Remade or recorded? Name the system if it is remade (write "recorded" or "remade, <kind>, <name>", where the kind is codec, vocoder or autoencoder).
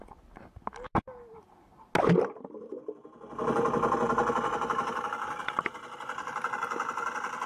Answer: recorded